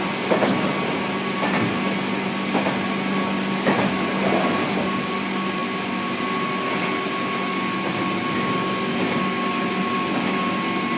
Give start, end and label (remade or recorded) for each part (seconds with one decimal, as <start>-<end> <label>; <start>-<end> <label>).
0.0-11.0 recorded